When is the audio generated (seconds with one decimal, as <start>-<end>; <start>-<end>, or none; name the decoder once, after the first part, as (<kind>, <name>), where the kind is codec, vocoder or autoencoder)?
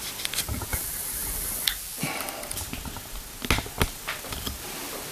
none